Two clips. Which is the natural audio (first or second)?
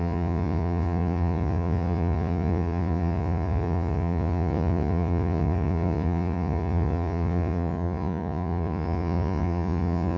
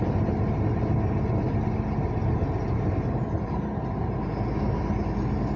second